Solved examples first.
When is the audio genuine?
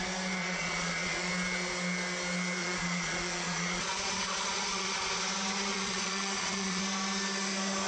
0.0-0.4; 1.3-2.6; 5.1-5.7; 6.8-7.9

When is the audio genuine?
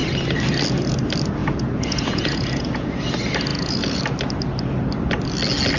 0.0-1.4; 3.0-3.5; 4.0-5.8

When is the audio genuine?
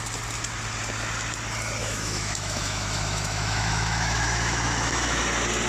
0.0-1.8; 5.2-5.7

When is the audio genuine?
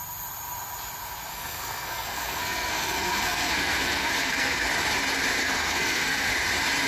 0.0-1.3; 4.7-5.4; 6.3-6.9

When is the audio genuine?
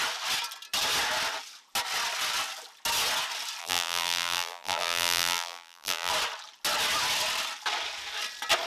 0.0-3.6; 6.1-8.7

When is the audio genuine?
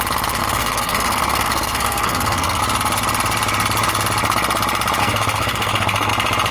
0.0-0.4; 2.6-5.0; 6.1-6.5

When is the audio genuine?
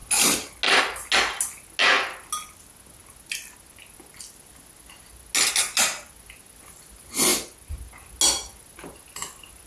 0.0-9.7